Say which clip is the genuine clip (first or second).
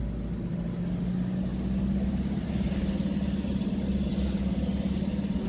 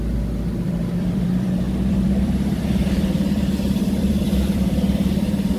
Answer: first